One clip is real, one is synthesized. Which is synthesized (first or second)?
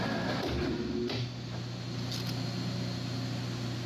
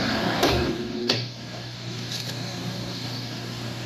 second